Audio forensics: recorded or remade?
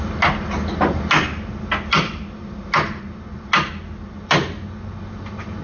recorded